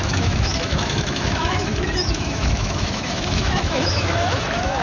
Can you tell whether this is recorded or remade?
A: remade